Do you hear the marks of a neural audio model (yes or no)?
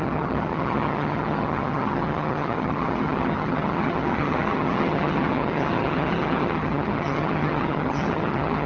yes